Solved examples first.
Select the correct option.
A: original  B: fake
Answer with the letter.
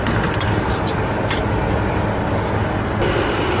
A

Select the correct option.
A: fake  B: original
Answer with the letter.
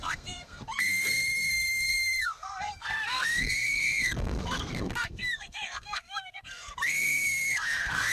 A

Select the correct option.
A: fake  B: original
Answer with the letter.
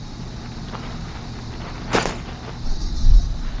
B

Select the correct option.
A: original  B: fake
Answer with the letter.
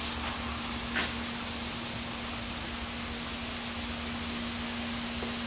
A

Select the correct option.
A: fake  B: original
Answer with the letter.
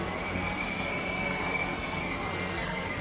A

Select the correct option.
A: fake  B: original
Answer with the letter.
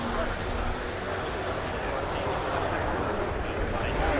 B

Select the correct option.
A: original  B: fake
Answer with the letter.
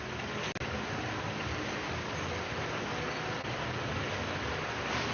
A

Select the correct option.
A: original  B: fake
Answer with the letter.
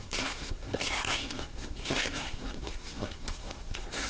B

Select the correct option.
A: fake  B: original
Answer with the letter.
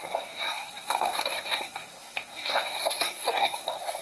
A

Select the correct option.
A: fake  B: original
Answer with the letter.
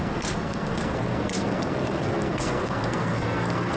A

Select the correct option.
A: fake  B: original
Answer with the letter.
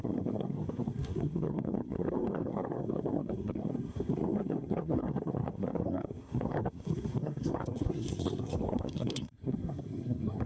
A